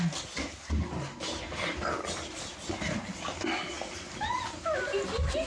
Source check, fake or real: real